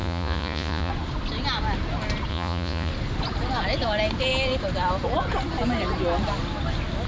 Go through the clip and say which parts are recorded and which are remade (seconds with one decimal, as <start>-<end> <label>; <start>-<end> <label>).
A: 0.0-0.9 remade; 0.9-2.3 recorded; 2.3-2.9 remade; 2.9-7.1 recorded